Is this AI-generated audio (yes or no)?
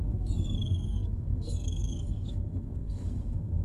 yes